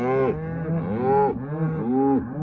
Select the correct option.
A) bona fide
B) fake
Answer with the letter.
A